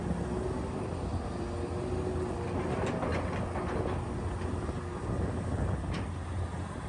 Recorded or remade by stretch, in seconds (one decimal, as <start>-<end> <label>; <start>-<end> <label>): 0.0-6.9 recorded